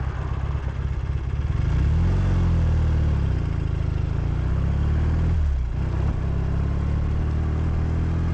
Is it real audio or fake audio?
real